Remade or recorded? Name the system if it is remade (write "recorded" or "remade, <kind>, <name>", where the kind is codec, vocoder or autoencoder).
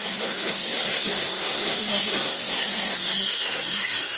remade, codec, SNAC